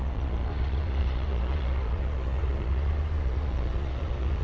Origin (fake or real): fake